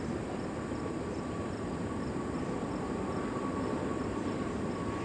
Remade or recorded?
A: recorded